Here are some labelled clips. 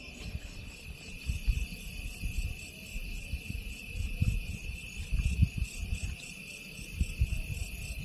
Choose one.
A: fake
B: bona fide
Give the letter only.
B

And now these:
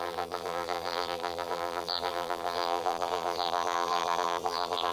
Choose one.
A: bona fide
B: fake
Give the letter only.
B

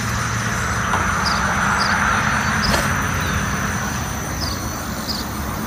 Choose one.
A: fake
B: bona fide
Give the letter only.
B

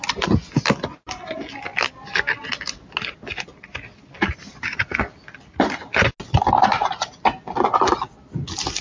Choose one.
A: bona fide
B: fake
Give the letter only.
A